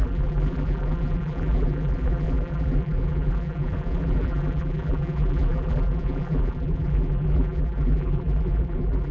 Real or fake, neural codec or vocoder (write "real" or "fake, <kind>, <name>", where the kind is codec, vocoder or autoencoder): fake, vocoder, BigVGAN v2